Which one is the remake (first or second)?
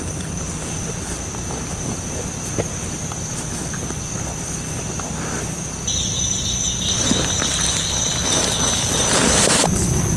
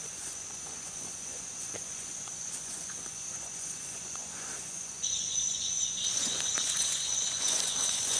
second